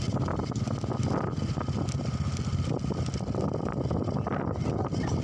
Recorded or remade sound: recorded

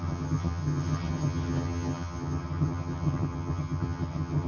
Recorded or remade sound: remade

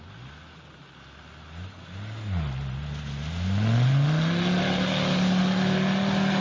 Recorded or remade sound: recorded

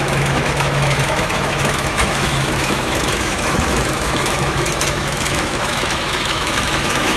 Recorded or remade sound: remade